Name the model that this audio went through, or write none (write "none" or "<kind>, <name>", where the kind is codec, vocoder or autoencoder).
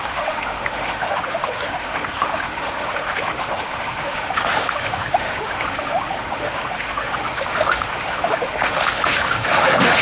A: autoencoder, DAC-VAE